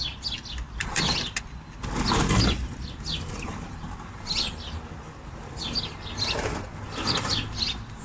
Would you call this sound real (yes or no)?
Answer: yes